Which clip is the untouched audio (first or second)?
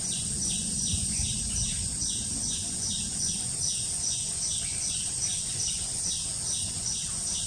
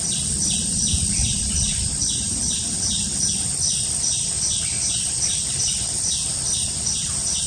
second